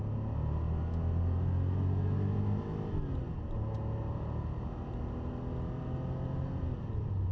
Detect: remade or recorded recorded